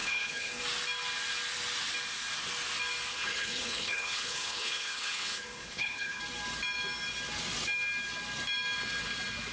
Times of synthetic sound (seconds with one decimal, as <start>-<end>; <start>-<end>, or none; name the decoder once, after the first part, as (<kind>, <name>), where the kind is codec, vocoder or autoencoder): 0.0-0.6 (codec, HILCodec); 3.1-6.2